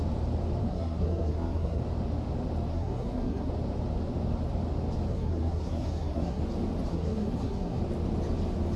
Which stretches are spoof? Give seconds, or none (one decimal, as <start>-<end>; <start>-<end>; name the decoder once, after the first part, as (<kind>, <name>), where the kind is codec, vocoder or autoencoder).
0.6-1.8 (codec, SNAC); 2.7-3.5; 5.1-6.4; 6.9-7.8